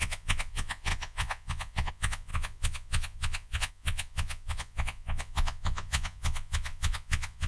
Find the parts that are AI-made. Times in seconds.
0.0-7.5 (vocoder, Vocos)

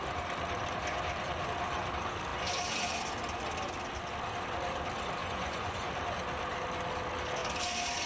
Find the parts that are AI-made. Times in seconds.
5.2-5.9 (vocoder, Vocos)